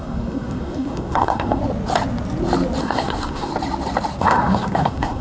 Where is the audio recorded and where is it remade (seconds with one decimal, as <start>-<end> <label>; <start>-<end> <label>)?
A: 0.0-1.6 remade; 1.6-2.8 recorded; 2.8-3.5 remade; 3.5-4.2 recorded; 4.2-5.2 remade